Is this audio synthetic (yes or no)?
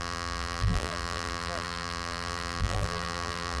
yes